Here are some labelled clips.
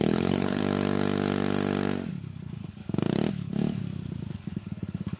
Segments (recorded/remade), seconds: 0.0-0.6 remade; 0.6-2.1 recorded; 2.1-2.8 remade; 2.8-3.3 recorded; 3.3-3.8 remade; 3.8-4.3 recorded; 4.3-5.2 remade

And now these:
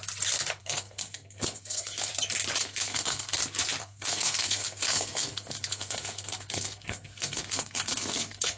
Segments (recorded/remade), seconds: 0.0-0.6 recorded; 0.6-2.1 remade; 2.1-2.6 recorded; 2.6-3.4 remade; 3.4-3.8 recorded; 3.8-8.6 remade

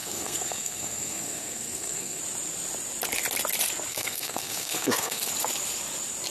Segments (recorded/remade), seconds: 0.0-2.2 remade; 2.2-3.9 recorded; 3.9-5.3 remade; 5.3-6.3 recorded